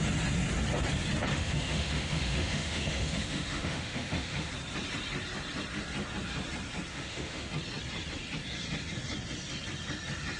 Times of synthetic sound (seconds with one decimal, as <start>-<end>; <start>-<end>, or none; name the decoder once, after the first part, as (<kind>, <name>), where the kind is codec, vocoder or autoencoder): 1.3-4.5 (autoencoder, DAC-VAE); 6.9-7.5

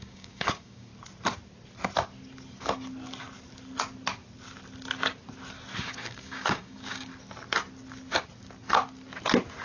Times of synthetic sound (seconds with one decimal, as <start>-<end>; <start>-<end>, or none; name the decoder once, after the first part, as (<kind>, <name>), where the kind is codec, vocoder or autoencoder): 0.0-0.9 (codec, DAC); 5.8-7.1

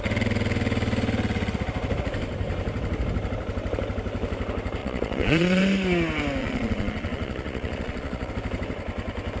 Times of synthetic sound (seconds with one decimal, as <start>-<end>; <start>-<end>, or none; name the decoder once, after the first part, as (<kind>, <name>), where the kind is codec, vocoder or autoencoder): 4.8-5.6 (vocoder, Vocos); 6.4-8.3

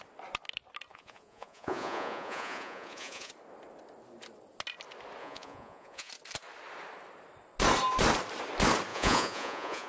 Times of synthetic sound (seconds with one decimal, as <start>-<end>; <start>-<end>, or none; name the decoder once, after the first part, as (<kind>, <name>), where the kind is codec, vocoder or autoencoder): 0.9-3.3 (vocoder, Vocos); 5.2-6.1; 8.9-9.9